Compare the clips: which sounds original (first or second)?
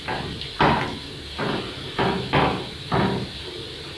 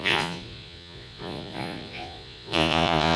first